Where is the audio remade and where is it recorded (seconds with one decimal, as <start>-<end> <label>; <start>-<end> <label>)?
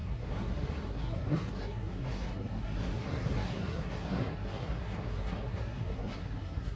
0.0-6.8 remade